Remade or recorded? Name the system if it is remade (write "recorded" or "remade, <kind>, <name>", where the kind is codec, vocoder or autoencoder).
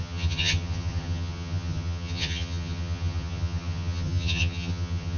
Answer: remade, vocoder, HiFi-GAN